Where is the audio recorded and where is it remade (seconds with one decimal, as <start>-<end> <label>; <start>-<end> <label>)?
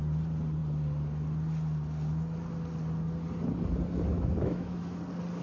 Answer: 0.0-4.1 recorded; 4.1-5.0 remade; 5.0-5.4 recorded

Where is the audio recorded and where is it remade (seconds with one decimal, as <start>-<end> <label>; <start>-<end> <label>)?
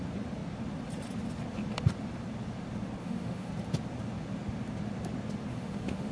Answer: 0.0-3.0 recorded; 3.0-3.5 remade; 3.5-5.5 recorded; 5.5-6.1 remade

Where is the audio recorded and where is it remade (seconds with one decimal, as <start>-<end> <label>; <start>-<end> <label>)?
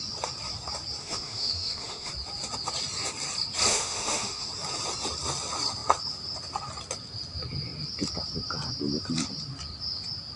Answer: 0.0-1.0 recorded; 1.0-2.1 remade; 2.1-3.7 recorded; 3.7-4.5 remade; 4.5-10.4 recorded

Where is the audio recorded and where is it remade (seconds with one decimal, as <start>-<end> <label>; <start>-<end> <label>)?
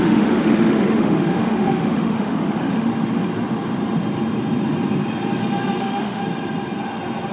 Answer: 0.0-2.9 remade; 2.9-5.8 recorded; 5.8-6.2 remade; 6.2-7.3 recorded